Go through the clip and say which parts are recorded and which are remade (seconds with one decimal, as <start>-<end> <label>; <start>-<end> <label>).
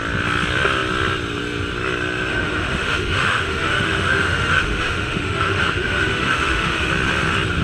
0.0-2.3 recorded; 2.3-6.9 remade; 6.9-7.6 recorded